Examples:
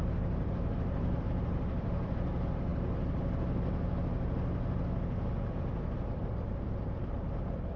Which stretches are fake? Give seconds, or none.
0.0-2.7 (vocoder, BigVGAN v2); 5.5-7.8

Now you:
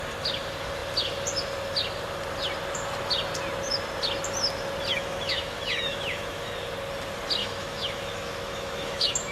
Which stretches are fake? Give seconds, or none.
4.9-6.5 (autoencoder, DAC-VAE); 7.4-9.3

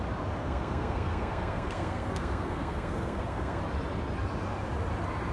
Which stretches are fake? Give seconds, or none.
0.4-3.6 (codec, SNAC)

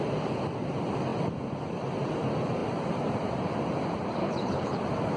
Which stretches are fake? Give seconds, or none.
4.2-4.8 (codec, HILCodec)

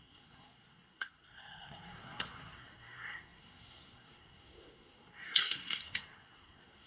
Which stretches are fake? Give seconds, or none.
0.0-6.9 (codec, SNAC)

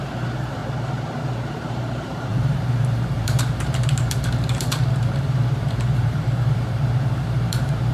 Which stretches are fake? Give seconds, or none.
0.0-0.6 (vocoder, BigVGAN v2); 1.2-7.9

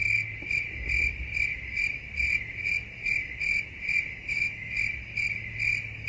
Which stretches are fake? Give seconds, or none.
4.2-4.8 (autoencoder, DAC-VAE)